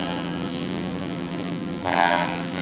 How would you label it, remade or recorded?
remade